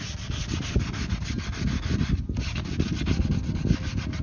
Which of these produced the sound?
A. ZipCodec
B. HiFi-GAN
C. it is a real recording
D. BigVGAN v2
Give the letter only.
C